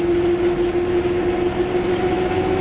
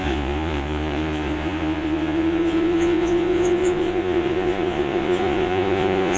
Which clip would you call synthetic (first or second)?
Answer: second